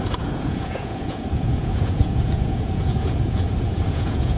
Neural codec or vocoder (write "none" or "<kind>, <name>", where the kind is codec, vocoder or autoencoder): vocoder, Vocos